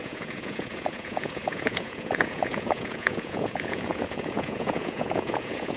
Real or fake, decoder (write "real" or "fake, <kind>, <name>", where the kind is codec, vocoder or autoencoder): fake, vocoder, Vocos